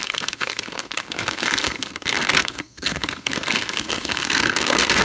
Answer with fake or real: fake